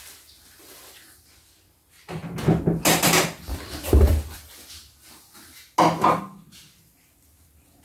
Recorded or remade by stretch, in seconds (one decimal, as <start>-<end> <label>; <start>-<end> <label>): 0.0-7.8 recorded